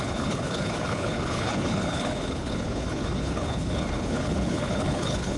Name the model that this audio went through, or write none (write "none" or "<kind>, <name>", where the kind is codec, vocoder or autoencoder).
codec, HILCodec